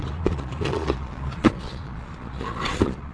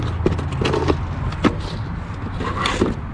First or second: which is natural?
second